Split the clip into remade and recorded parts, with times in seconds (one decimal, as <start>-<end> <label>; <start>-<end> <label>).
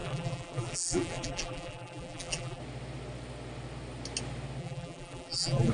0.0-2.6 remade; 2.6-4.6 recorded; 4.6-5.7 remade